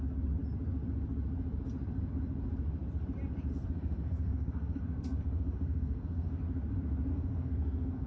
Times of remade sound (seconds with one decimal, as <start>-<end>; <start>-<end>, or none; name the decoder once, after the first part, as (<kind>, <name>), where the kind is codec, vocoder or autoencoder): 3.5-6.4 (codec, SNAC); 7.1-8.1